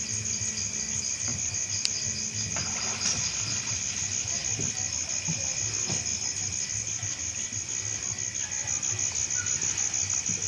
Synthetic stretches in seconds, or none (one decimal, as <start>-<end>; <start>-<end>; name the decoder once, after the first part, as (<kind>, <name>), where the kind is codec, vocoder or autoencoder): none